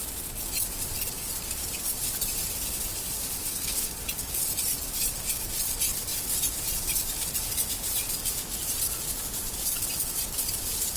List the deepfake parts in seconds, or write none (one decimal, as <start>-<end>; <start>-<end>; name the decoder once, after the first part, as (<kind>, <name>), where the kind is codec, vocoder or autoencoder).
3.4-3.9 (codec, SNAC)